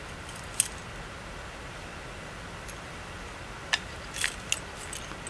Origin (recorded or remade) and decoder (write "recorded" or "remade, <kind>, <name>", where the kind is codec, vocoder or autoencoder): recorded